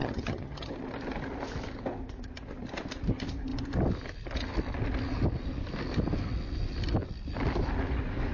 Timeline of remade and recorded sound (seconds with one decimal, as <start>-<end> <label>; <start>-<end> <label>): 0.0-0.7 remade; 0.7-8.3 recorded

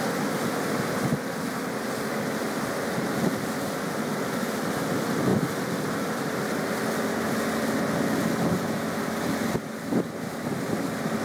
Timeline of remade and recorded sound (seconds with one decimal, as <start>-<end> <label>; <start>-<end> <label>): 0.0-11.2 recorded

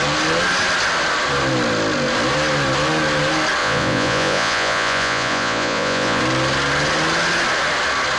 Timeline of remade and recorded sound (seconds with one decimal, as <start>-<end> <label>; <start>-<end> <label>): 0.0-3.6 recorded; 3.6-6.2 remade; 6.2-8.2 recorded

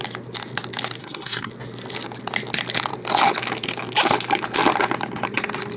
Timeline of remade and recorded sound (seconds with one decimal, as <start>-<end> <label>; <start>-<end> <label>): 0.0-1.0 recorded; 1.0-1.5 remade; 1.5-5.8 recorded

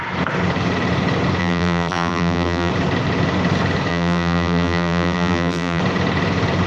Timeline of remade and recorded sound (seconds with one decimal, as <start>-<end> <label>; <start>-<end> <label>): 0.0-1.4 recorded; 1.4-2.7 remade; 2.7-3.9 recorded; 3.9-5.8 remade; 5.8-6.7 recorded

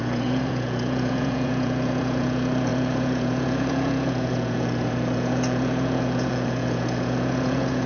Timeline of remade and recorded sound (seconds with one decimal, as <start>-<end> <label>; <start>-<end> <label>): 0.0-7.9 remade

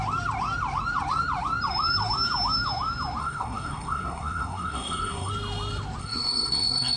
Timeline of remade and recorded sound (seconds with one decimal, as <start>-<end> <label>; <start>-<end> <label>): 0.0-3.2 recorded; 3.2-5.3 remade; 5.3-6.0 recorded; 6.0-7.0 remade

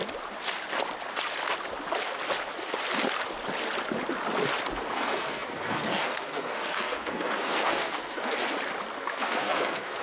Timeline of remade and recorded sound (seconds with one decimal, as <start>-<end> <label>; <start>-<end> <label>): 0.0-4.9 recorded; 4.9-8.4 remade; 8.4-9.0 recorded; 9.0-10.0 remade